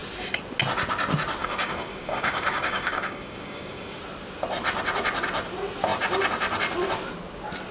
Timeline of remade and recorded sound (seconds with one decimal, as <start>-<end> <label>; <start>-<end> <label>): 0.0-1.4 recorded; 1.4-4.0 remade; 4.0-7.7 recorded